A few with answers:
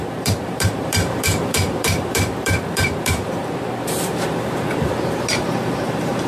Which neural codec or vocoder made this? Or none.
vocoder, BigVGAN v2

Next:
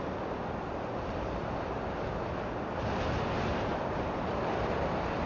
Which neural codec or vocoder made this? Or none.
none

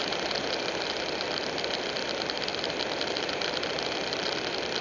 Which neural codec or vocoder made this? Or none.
vocoder, BigVGAN v2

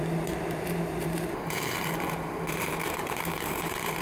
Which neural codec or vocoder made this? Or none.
vocoder, BigVGAN v2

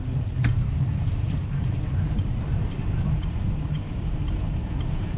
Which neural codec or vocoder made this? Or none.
vocoder, BigVGAN v2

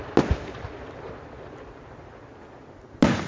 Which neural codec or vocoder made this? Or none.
none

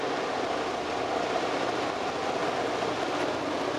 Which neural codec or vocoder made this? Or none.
none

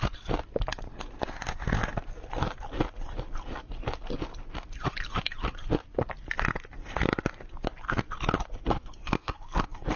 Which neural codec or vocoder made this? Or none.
none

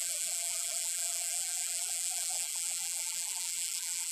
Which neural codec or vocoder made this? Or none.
vocoder, BigVGAN v2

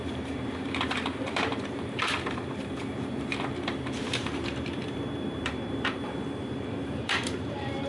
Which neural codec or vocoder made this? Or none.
vocoder, BigVGAN v2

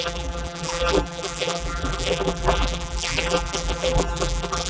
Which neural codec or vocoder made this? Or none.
vocoder, BigVGAN v2